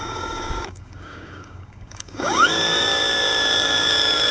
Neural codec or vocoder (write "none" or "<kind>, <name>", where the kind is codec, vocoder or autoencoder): codec, DAC